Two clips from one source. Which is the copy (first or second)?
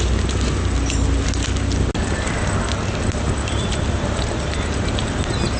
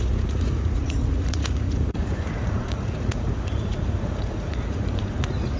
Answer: second